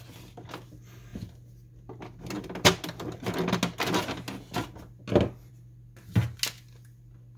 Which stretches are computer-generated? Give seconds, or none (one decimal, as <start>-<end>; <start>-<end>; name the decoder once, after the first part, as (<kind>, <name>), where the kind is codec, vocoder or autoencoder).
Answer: none